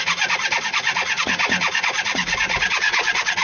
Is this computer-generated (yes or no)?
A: yes